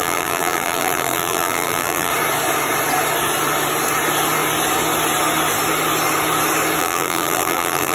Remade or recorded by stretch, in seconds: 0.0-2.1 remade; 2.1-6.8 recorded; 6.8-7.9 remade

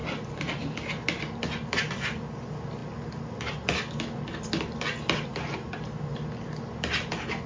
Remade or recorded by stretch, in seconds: 0.0-7.5 recorded

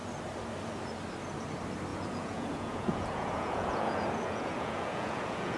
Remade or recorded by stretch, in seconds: 0.0-1.9 recorded; 1.9-5.6 remade

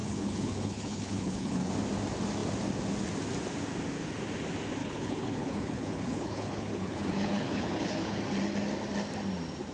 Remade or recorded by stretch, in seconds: 0.0-1.7 remade; 1.7-4.8 recorded; 4.8-8.2 remade; 8.2-9.7 recorded